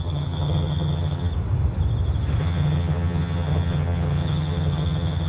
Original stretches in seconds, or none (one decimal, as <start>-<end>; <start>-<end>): 1.3-2.4

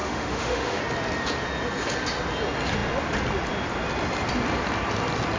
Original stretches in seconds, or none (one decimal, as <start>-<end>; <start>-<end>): 0.8-5.4

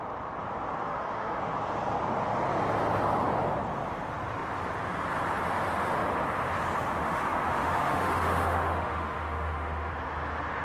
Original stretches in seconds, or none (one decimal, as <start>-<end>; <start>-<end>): 0.0-0.9; 1.4-7.0; 9.9-10.6

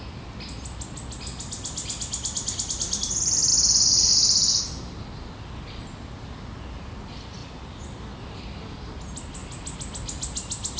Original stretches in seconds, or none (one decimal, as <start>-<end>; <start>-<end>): 0.0-10.8